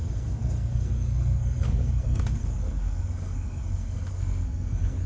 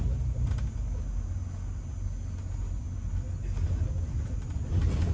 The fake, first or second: first